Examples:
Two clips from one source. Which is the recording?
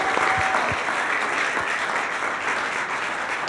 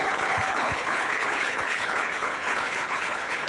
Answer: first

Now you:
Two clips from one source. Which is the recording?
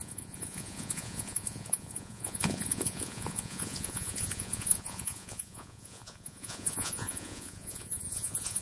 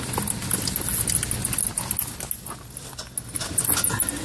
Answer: second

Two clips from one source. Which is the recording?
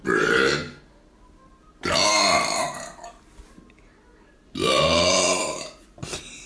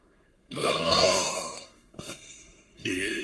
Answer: first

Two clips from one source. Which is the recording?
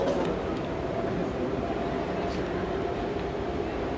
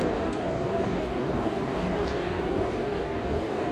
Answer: first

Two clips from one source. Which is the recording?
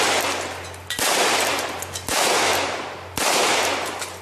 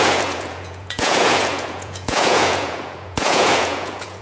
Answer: first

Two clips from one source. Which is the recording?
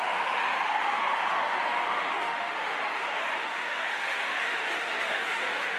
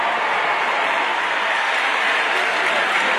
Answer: second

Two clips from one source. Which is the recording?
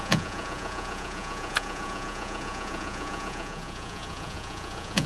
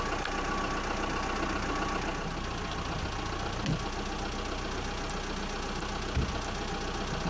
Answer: second